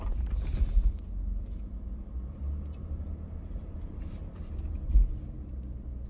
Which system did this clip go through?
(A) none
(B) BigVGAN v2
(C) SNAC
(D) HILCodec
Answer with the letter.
B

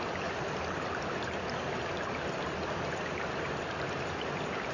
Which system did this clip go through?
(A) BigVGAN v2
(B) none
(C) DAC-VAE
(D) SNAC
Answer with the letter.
B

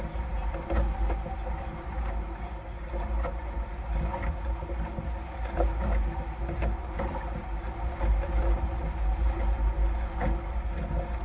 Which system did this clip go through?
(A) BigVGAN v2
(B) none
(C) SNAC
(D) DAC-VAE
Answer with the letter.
B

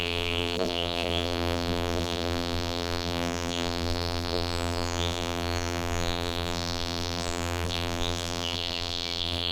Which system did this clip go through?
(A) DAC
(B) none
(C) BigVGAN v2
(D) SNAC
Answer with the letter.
C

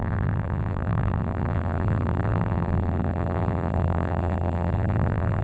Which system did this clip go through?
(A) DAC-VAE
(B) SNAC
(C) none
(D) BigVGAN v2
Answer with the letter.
D